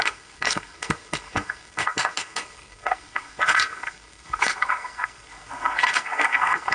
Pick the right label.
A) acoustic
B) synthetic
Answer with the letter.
B